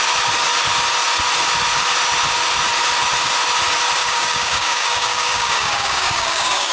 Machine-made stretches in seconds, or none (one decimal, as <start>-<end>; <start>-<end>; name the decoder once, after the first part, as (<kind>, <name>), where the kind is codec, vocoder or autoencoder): 4.0-6.7 (codec, DAC)

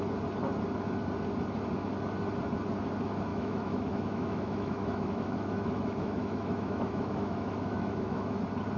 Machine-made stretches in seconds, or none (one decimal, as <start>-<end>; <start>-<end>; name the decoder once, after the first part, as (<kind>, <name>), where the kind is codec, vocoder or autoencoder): 3.3-8.4 (autoencoder, DAC-VAE)

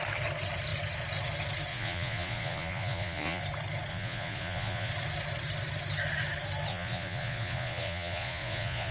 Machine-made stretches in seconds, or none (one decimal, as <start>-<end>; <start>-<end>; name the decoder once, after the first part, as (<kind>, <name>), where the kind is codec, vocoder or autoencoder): 1.7-3.4 (vocoder, Vocos); 3.9-4.9; 6.7-8.9

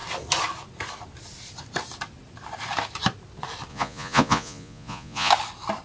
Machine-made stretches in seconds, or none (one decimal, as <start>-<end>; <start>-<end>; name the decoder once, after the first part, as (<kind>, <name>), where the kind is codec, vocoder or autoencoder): 3.7-5.3 (vocoder, Vocos)

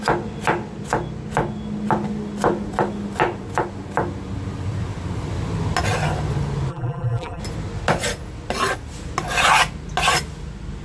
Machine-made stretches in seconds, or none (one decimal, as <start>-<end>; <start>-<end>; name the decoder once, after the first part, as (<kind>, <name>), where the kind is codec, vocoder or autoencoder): 6.7-7.4 (vocoder, BigVGAN v2)

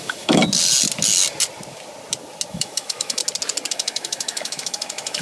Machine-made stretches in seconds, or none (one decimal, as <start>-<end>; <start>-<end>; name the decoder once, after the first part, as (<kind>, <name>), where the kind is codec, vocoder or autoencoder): 0.0-0.4 (autoencoder, DAC-VAE); 2.5-3.2; 3.7-5.2